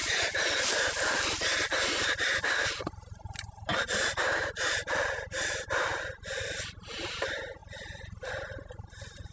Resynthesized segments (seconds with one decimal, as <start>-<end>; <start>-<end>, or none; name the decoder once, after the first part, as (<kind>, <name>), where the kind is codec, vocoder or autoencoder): none